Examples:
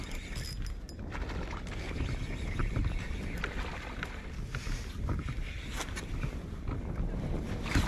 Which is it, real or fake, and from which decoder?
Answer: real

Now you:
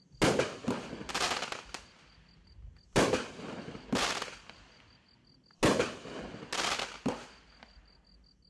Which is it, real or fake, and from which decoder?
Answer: real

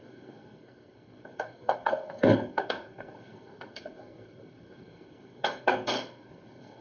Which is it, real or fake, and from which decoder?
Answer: fake, codec, SNAC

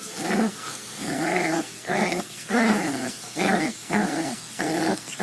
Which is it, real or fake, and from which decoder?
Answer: fake, codec, SNAC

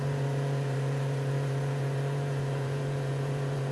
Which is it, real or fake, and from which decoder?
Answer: fake, vocoder, Vocos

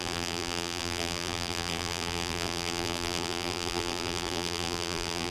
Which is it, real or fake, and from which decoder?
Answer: fake, vocoder, BigVGAN v2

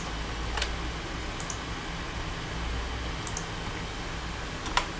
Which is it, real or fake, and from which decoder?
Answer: real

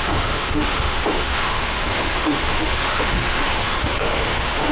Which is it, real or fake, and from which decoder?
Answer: fake, autoencoder, DAC-VAE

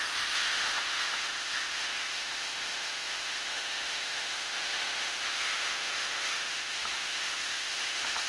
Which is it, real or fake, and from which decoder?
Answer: fake, autoencoder, DAC-VAE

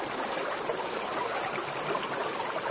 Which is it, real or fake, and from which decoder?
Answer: real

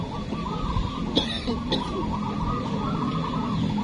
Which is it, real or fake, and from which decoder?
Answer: real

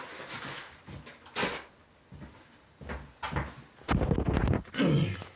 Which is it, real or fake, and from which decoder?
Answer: real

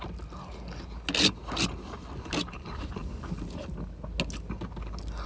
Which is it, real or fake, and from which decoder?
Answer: real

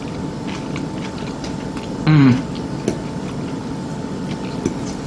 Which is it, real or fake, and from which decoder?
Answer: real